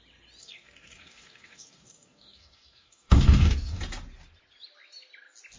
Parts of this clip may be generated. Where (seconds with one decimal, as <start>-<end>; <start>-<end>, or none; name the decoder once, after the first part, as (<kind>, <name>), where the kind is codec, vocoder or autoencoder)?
0.4-3.8 (codec, DAC)